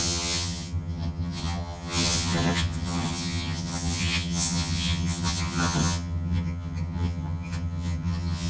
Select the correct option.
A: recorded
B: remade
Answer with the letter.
B